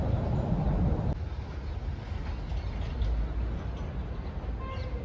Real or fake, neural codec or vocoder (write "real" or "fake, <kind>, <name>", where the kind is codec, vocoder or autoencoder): real